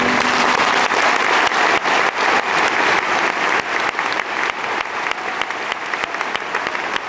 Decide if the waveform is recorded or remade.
recorded